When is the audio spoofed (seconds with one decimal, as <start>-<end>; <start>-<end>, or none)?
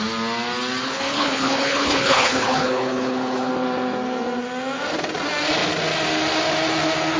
0.8-3.5